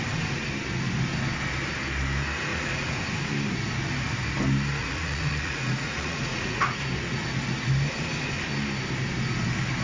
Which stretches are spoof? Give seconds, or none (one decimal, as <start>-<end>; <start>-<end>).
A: 2.5-3.0; 4.8-6.8